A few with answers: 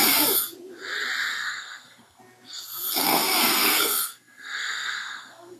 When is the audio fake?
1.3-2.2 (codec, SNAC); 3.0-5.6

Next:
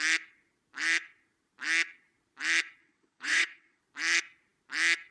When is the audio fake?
2.8-3.8 (vocoder, WaveNeXt)

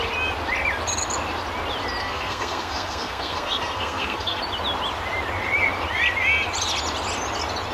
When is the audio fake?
2.0-4.4 (codec, SNAC)

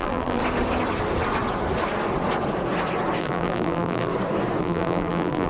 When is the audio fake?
0.0-0.4 (vocoder, BigVGAN v2); 3.2-4.1; 4.6-5.5

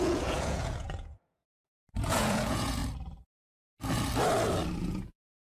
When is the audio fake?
0.0-1.5 (vocoder, Vocos); 2.0-2.8; 4.8-5.5

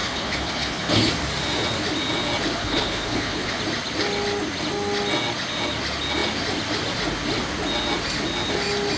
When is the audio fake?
0.0-1.1 (codec, HILCodec); 2.6-3.6

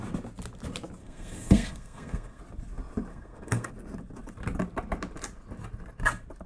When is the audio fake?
1.0-2.4 (codec, SNAC); 3.1-3.7